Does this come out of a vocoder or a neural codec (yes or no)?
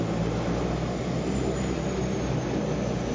no